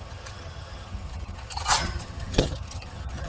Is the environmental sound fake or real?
fake